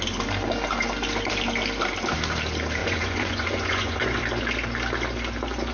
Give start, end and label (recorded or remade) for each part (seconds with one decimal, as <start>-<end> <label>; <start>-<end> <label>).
0.0-2.8 recorded; 2.8-4.2 remade; 4.2-5.7 recorded